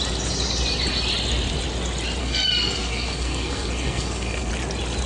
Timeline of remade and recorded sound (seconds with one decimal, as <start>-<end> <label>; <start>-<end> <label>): 0.0-2.2 recorded; 2.2-4.5 remade; 4.5-5.1 recorded